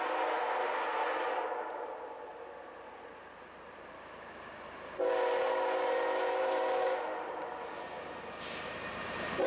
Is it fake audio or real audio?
real